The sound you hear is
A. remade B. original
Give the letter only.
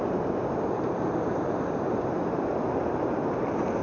B